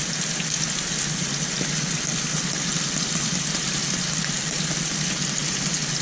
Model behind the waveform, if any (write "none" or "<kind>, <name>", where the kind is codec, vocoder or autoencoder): none